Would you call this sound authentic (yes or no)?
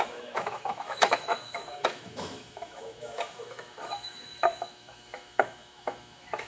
no